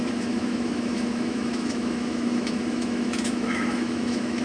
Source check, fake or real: fake